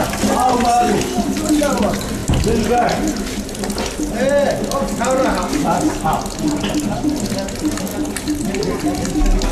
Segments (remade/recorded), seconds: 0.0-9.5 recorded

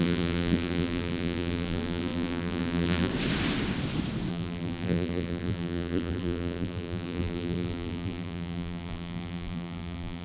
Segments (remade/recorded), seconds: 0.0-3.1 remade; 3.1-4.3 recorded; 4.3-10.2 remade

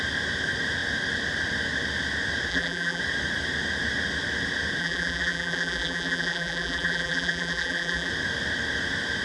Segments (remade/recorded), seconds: 0.0-2.5 recorded; 2.5-3.0 remade; 3.0-4.8 recorded; 4.8-8.1 remade; 8.1-9.2 recorded

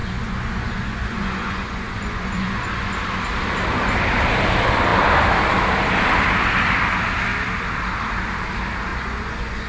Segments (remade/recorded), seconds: 0.0-2.9 remade; 2.9-8.9 recorded; 8.9-9.7 remade

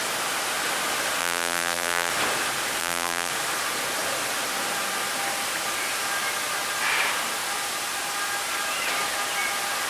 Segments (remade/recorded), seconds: 0.0-1.2 recorded; 1.2-2.1 remade; 2.1-2.8 recorded; 2.8-3.3 remade; 3.3-9.9 recorded

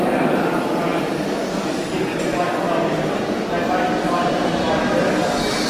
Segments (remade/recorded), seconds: 0.0-5.7 recorded